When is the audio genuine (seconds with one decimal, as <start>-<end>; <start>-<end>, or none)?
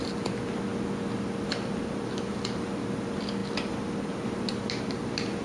0.7-1.4